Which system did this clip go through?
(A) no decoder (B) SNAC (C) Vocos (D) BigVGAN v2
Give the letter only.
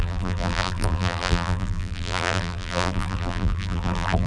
D